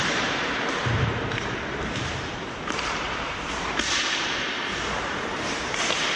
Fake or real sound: fake